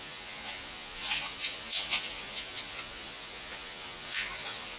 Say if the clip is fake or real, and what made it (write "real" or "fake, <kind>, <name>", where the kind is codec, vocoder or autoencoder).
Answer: fake, vocoder, Vocos